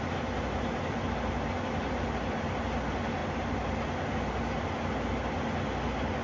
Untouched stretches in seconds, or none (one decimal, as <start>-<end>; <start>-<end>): 0.0-6.2